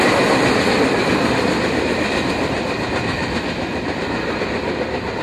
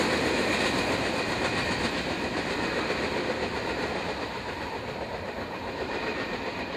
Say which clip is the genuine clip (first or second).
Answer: second